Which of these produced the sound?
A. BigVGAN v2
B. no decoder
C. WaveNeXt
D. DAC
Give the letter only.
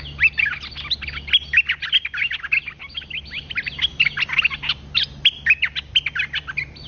B